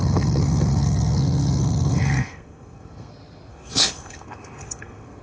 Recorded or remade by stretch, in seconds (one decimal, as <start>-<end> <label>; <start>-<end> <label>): 0.0-3.1 remade; 3.1-3.5 recorded; 3.5-5.2 remade